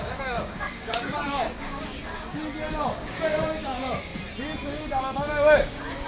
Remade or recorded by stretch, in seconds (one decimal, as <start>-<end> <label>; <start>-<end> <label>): 0.0-2.4 remade; 2.4-3.0 recorded; 3.0-4.1 remade; 4.1-5.0 recorded; 5.0-6.1 remade